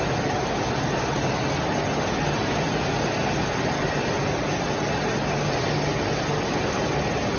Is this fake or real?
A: real